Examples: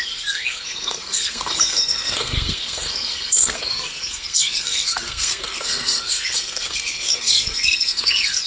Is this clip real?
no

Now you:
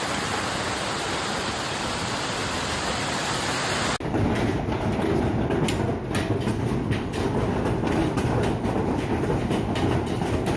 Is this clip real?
yes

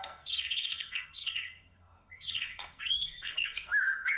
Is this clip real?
no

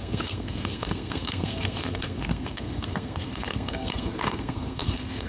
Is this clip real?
no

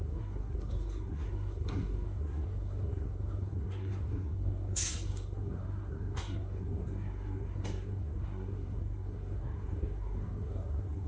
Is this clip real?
no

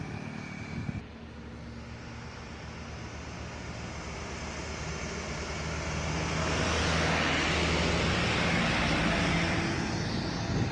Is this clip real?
yes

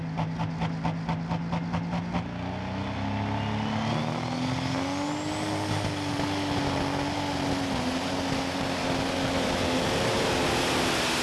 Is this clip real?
yes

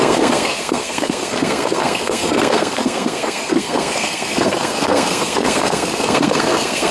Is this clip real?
no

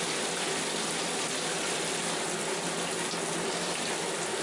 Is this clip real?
yes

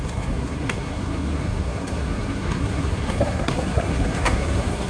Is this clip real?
no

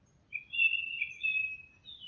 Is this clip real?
yes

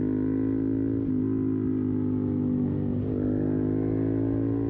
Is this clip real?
yes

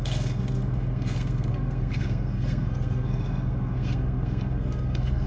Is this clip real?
no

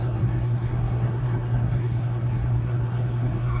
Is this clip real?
no